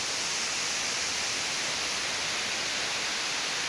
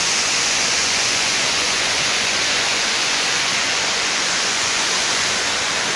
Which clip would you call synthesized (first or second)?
second